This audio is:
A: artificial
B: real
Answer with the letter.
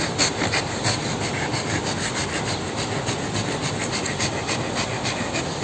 B